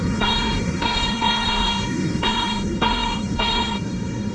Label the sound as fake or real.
fake